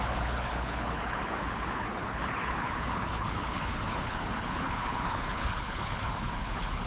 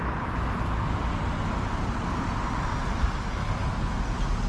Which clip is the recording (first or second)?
second